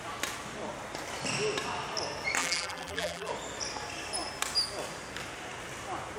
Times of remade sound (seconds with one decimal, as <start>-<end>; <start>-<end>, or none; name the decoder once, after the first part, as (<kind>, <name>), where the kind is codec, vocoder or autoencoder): 2.4-3.3 (vocoder, BigVGAN v2)